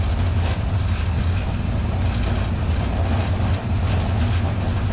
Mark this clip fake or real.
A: real